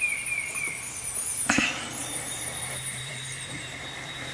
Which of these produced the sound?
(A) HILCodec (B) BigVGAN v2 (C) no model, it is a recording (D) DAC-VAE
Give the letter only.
B